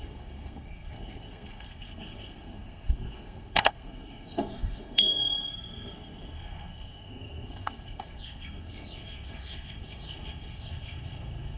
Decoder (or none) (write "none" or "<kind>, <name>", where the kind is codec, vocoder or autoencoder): codec, SNAC